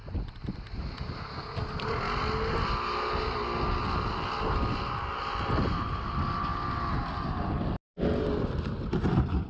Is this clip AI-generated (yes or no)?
no